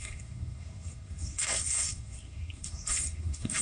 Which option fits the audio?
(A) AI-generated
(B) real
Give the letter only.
A